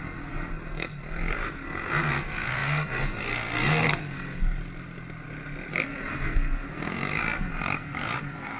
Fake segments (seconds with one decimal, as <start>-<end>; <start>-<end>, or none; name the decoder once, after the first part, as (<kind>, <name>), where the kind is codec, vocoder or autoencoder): 0.0-4.6 (codec, SNAC); 5.7-8.6